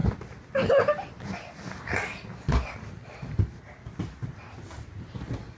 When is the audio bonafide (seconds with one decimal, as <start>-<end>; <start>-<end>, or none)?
0.0-5.6

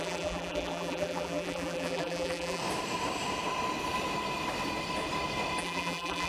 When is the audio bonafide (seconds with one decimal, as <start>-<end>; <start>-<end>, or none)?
2.6-5.6